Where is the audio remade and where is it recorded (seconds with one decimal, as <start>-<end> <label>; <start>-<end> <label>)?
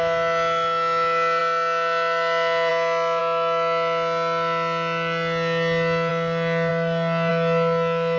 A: 0.0-8.2 recorded